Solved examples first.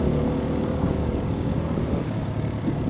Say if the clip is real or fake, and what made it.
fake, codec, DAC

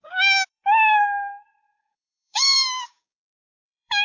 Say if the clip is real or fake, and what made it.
fake, codec, DAC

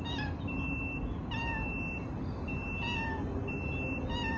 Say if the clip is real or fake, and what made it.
real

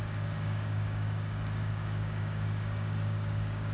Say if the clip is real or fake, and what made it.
fake, codec, DAC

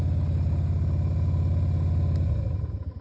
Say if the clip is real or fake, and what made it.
real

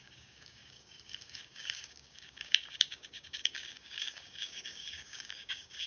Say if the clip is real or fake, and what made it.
fake, codec, DAC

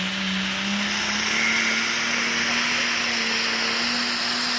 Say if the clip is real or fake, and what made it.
real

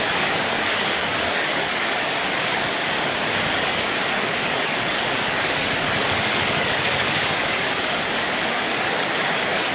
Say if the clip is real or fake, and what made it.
fake, codec, DAC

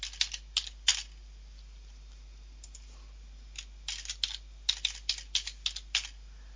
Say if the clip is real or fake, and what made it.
real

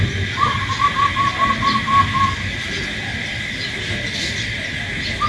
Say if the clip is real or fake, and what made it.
real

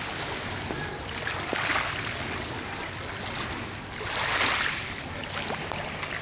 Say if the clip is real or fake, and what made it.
real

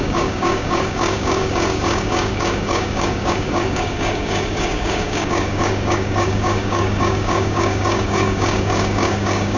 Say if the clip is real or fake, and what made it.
fake, codec, DAC